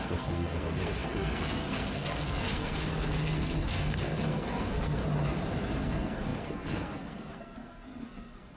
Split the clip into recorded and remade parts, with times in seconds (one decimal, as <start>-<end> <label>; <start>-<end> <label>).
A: 0.0-5.0 remade; 5.0-5.8 recorded; 5.8-8.6 remade